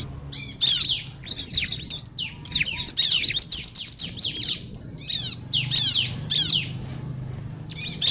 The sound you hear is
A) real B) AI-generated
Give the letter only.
A